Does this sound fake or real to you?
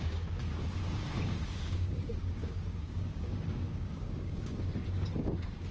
fake